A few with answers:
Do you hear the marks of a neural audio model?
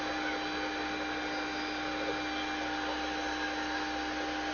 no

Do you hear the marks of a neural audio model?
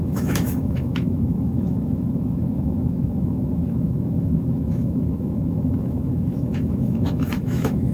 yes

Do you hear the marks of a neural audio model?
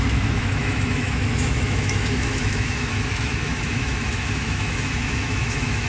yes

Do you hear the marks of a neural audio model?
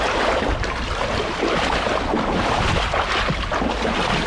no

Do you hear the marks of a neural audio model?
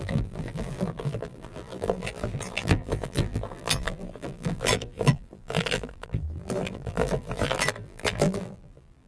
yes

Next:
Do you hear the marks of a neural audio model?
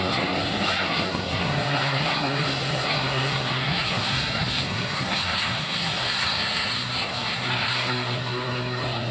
yes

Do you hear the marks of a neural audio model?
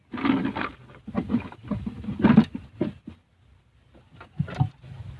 no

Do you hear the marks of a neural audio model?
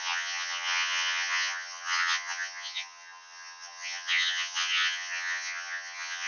yes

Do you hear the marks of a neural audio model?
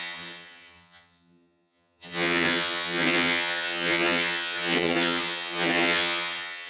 yes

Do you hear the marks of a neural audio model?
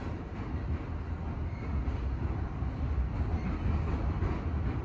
no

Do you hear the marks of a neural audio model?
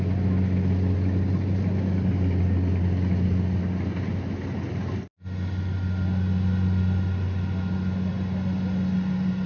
no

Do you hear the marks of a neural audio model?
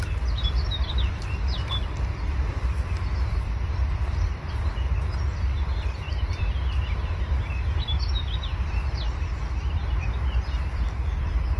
yes